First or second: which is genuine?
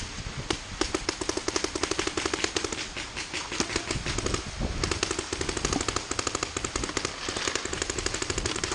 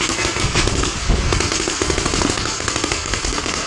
first